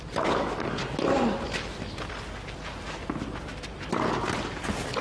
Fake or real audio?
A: real